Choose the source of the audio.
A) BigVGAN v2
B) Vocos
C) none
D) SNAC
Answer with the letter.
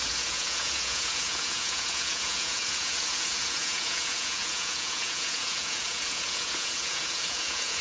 B